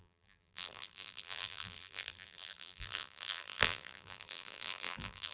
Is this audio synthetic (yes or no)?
yes